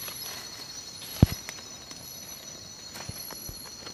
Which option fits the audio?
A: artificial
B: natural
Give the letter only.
B